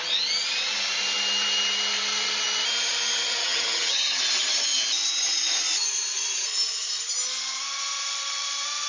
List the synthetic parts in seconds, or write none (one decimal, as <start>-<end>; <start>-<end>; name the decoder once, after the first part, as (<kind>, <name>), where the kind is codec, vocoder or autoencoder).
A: 3.4-4.2 (vocoder, HiFi-GAN)